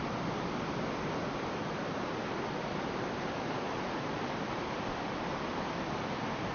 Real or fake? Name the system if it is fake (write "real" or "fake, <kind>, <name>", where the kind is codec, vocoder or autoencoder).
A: real